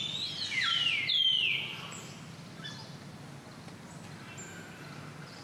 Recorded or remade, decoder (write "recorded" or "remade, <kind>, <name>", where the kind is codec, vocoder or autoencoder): recorded